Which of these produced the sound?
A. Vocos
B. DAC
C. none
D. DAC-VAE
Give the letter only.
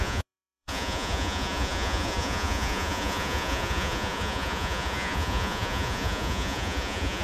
A